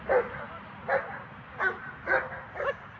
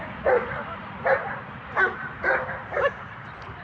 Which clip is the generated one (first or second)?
second